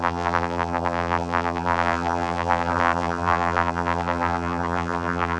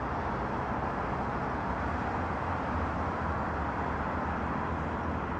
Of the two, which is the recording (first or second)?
second